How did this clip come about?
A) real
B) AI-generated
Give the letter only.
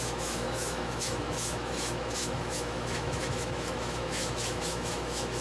B